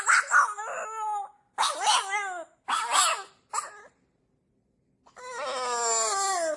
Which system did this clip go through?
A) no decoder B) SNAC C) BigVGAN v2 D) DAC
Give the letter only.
A